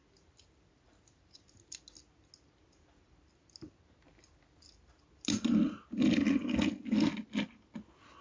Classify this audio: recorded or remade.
recorded